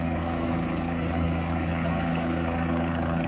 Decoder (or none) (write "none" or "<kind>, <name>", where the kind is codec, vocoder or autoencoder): codec, DAC